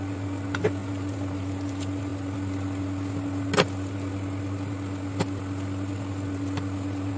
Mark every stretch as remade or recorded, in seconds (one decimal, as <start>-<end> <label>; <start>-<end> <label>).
0.0-7.2 recorded